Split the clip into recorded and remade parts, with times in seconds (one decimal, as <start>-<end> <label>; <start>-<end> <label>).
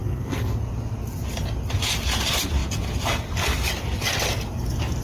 0.0-0.6 remade; 0.6-5.0 recorded